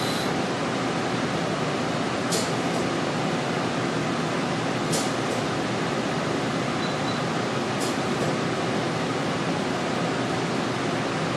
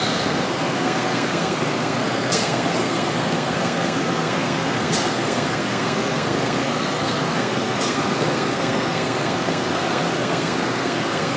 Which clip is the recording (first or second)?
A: first